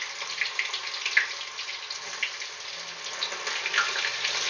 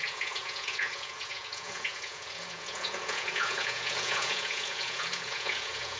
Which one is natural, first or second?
first